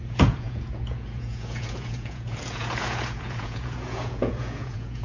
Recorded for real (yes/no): no